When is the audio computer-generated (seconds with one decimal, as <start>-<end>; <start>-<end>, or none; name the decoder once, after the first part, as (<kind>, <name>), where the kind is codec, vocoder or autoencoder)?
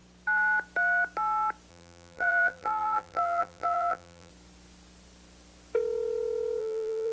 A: 1.7-4.3 (vocoder, BigVGAN v2); 6.6-7.1